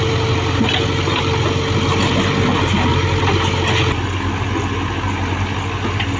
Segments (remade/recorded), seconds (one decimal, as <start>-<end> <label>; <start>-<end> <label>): 0.0-6.2 recorded